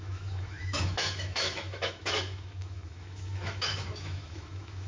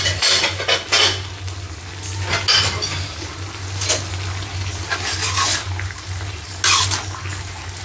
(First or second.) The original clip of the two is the second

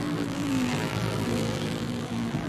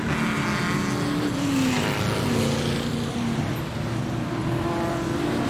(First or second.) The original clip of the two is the second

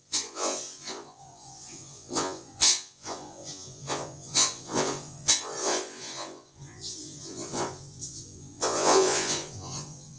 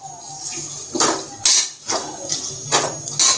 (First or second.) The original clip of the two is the second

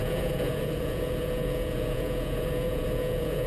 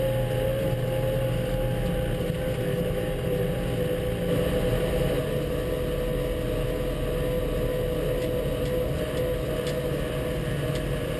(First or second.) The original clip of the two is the second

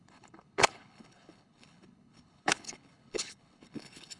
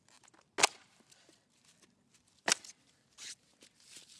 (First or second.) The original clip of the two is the second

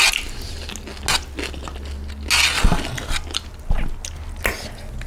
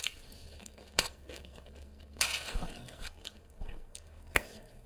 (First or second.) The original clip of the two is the first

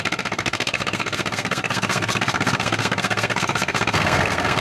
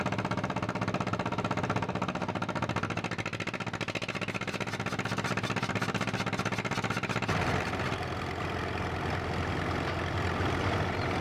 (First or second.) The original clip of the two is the second